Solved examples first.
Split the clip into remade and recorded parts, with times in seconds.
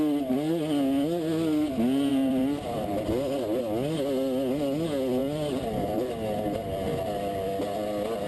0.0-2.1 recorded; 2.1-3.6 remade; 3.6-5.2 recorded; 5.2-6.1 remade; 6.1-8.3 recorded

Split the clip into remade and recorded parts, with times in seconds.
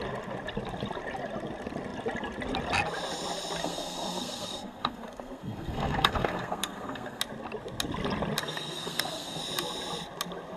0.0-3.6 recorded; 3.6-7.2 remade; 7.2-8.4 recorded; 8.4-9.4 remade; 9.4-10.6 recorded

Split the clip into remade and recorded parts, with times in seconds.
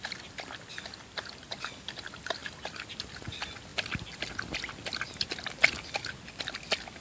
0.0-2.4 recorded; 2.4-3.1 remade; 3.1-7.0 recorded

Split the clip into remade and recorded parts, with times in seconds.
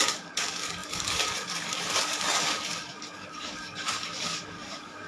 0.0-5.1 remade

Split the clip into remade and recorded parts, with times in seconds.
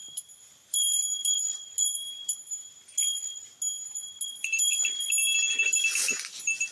0.0-6.7 recorded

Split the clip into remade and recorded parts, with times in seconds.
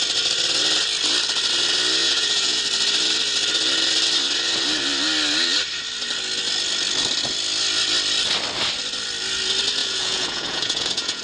0.0-2.0 recorded; 2.0-2.6 remade; 2.6-9.8 recorded; 9.8-11.2 remade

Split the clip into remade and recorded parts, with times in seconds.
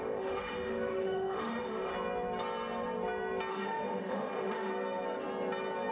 0.0-1.9 remade; 1.9-3.5 recorded; 3.5-4.7 remade; 4.7-5.9 recorded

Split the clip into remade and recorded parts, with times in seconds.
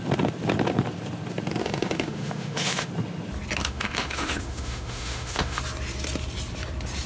0.0-1.6 recorded; 1.6-2.9 remade; 2.9-3.6 recorded; 3.6-5.6 remade; 5.6-7.1 recorded